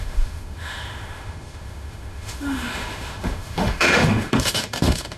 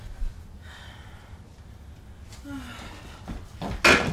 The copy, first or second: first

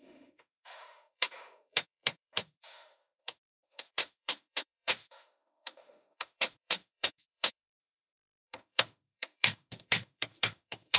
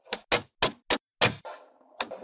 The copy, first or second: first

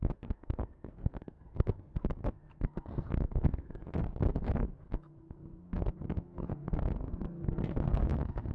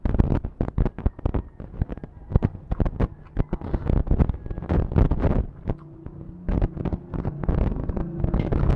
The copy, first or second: first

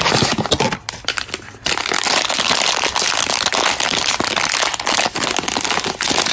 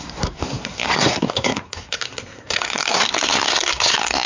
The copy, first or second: second